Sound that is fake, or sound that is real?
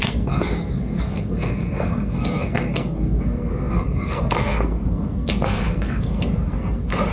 fake